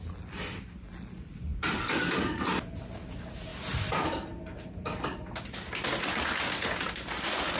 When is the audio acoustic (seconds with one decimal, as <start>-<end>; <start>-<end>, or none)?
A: 0.0-7.6